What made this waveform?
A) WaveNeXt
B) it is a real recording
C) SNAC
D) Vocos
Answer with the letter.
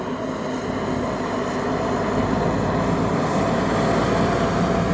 B